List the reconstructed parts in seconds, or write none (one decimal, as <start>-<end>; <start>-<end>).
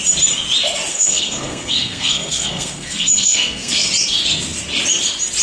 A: 0.9-3.9